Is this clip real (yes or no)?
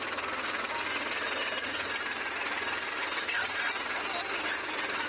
yes